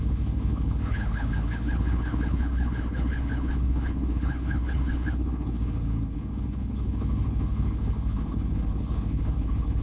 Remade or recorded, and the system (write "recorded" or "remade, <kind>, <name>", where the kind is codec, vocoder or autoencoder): remade, codec, HILCodec